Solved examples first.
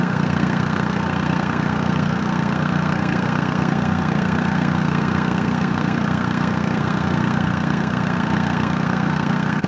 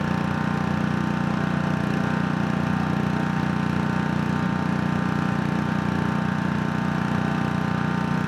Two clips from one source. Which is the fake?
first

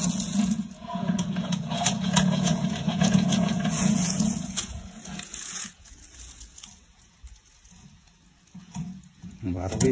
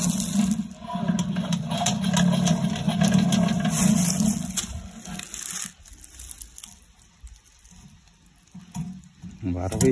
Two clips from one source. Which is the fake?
first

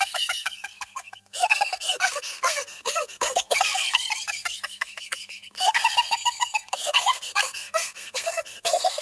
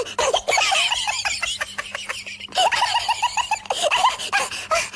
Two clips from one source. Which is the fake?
first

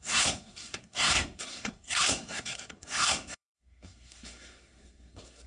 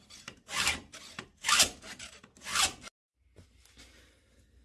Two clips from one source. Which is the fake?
first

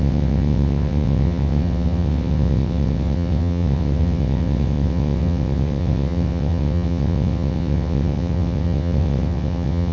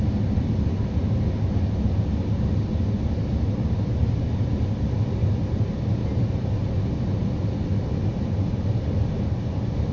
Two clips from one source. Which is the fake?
first